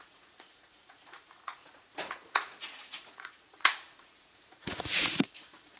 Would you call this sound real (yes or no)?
no